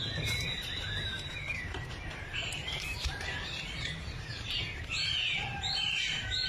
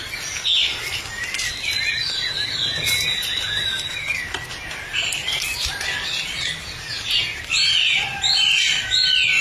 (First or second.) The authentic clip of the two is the second